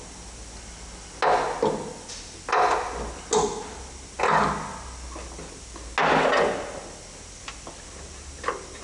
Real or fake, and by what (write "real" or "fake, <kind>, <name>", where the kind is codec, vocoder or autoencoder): real